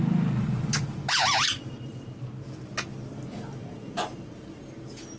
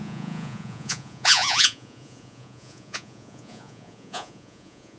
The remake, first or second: second